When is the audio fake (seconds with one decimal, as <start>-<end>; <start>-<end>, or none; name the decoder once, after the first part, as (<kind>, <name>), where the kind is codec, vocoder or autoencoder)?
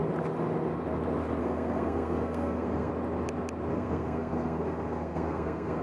1.4-2.9 (codec, SNAC); 3.7-5.8